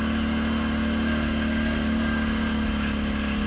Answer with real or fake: real